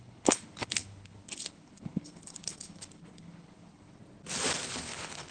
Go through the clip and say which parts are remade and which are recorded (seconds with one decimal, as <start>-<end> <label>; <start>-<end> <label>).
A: 0.0-4.0 remade; 4.0-4.7 recorded; 4.7-5.3 remade